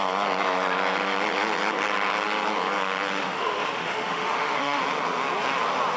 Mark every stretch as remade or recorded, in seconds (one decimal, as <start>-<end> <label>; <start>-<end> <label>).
0.0-3.1 recorded; 3.1-4.8 remade; 4.8-6.0 recorded